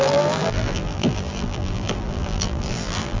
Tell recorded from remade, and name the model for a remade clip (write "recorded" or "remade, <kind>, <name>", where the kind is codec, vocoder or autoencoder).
remade, vocoder, BigVGAN v2